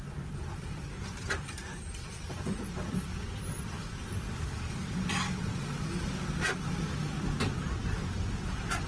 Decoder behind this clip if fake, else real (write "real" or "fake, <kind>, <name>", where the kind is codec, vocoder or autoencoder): fake, vocoder, BigVGAN v2